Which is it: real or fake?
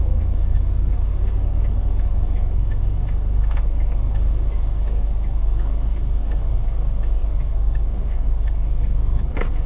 fake